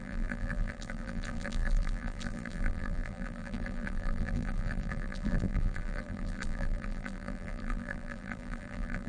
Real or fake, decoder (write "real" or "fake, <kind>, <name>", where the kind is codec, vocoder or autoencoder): fake, vocoder, BigVGAN v2